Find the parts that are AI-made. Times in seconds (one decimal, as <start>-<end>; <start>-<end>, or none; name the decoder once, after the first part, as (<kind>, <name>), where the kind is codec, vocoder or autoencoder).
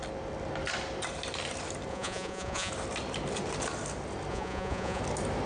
1.9-2.7 (vocoder, Vocos); 4.3-5.0